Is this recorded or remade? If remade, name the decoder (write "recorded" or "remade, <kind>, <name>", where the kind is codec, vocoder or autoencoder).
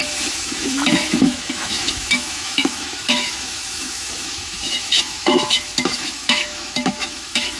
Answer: remade, autoencoder, DAC-VAE